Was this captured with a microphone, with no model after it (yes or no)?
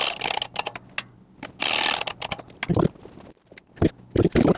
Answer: yes